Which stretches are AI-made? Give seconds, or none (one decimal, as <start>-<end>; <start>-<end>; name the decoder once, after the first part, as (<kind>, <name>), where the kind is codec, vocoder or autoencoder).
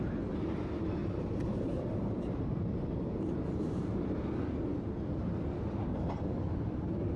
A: 1.0-4.0 (vocoder, BigVGAN v2)